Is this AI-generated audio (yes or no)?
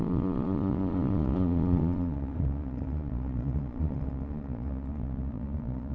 yes